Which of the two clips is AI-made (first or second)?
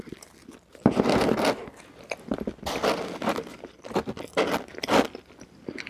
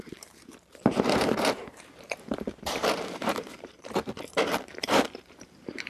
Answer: second